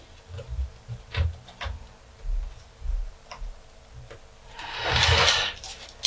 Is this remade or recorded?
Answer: recorded